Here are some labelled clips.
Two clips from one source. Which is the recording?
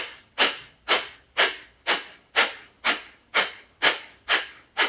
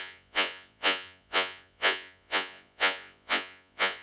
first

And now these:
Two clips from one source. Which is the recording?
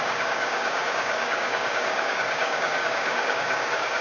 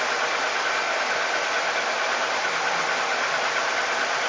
second